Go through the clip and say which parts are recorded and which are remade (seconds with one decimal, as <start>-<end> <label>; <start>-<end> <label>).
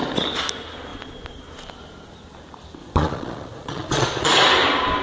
0.0-2.8 recorded; 2.8-4.3 remade; 4.3-5.0 recorded